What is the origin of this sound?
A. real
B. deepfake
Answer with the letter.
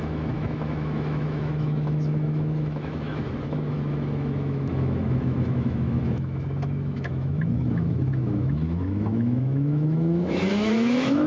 B